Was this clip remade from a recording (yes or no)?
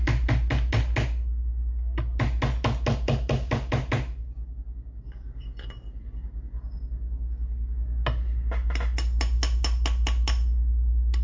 no